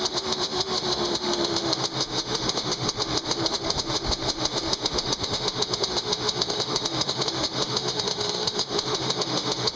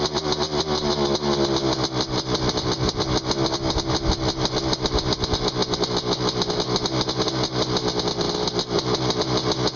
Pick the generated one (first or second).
first